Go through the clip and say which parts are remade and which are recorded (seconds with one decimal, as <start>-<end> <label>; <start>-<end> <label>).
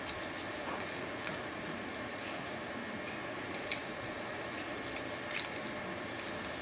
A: 0.0-0.5 recorded; 0.5-2.7 remade; 2.7-3.2 recorded; 3.2-4.8 remade; 4.8-6.6 recorded